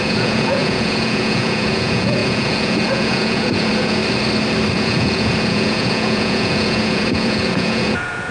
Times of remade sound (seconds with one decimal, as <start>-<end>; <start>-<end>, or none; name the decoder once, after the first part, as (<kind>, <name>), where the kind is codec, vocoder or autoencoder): 0.0-4.0 (vocoder, Vocos); 4.8-8.3